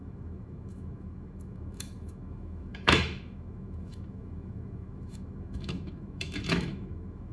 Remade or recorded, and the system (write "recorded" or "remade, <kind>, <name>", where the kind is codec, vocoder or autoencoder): remade, autoencoder, DAC-VAE